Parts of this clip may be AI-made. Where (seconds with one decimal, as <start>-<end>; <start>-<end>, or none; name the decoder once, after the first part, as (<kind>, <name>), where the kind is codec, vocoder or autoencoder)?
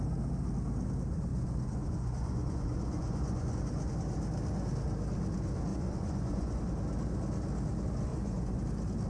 1.3-3.6 (vocoder, Vocos); 5.7-6.6; 8.1-8.6